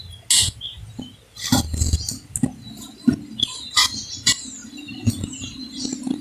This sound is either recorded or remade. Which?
recorded